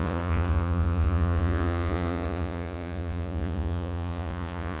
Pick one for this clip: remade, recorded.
remade